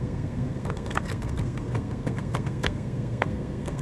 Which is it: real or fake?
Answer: fake